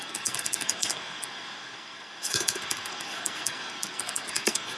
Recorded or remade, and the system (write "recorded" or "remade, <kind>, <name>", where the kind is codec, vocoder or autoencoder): remade, codec, SNAC